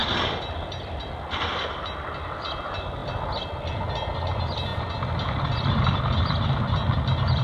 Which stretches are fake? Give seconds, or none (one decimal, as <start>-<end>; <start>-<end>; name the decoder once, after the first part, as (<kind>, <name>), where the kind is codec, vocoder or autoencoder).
0.8-3.0 (vocoder, BigVGAN v2); 3.7-4.7; 6.0-7.4